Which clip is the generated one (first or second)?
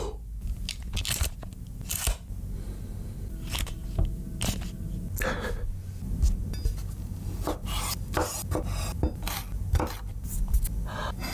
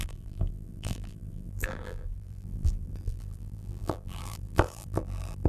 second